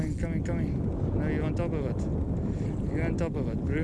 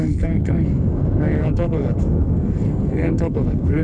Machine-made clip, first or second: second